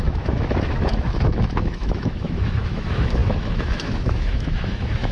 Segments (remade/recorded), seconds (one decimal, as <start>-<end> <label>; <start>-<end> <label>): 0.0-5.1 remade